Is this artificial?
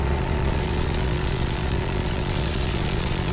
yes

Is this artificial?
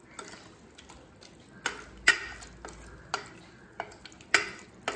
no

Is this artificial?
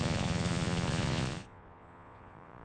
yes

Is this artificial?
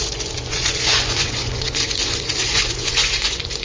yes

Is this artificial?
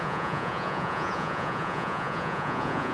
yes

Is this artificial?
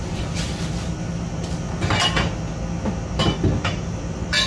no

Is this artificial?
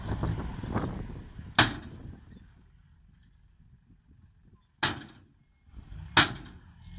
no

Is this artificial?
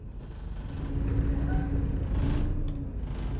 no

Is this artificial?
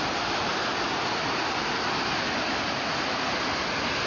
no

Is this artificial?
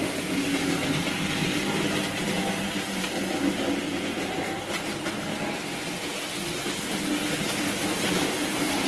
no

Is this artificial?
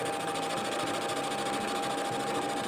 no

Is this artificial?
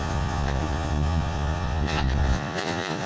yes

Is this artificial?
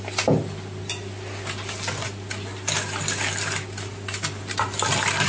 no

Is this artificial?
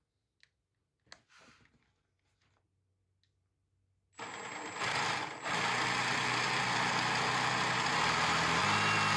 no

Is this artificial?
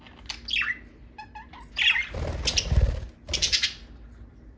no